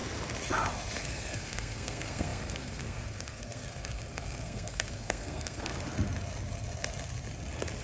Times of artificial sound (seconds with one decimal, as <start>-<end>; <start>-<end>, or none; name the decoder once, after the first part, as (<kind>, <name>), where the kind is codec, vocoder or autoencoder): 1.0-5.7 (codec, SNAC)